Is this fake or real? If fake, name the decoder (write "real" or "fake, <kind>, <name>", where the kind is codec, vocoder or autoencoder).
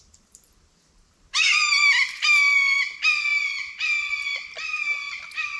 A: real